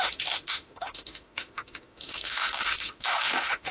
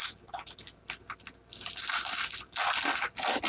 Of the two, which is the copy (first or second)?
first